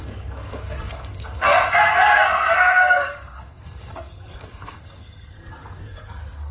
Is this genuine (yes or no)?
no